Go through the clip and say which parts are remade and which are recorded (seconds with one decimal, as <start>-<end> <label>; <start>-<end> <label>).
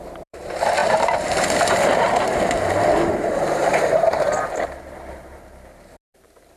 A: 0.0-6.6 remade